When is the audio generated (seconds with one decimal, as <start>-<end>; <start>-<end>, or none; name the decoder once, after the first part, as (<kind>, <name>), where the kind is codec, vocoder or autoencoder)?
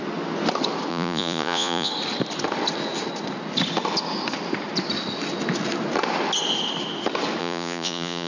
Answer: 0.9-1.9 (vocoder, Vocos); 7.4-8.3